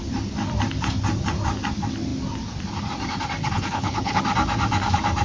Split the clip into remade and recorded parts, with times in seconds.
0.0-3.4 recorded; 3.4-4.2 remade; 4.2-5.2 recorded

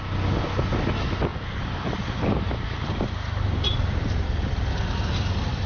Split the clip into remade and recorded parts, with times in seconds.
0.0-1.3 recorded; 1.3-4.7 remade; 4.7-5.7 recorded

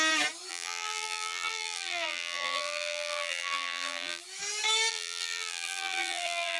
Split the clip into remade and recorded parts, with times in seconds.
0.0-0.5 recorded; 0.5-4.2 remade; 4.2-4.9 recorded; 4.9-6.6 remade

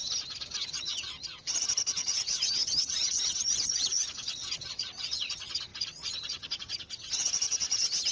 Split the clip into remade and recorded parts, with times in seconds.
0.0-0.6 recorded; 0.6-8.1 remade

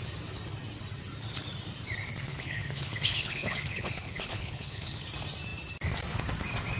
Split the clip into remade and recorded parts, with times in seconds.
0.0-2.3 recorded; 2.3-5.0 remade; 5.0-6.8 recorded

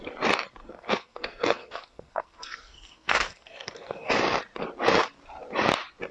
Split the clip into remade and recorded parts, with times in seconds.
0.0-0.6 recorded; 0.6-4.1 remade; 4.1-6.1 recorded

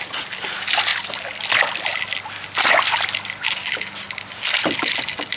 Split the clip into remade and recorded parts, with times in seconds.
0.0-5.4 recorded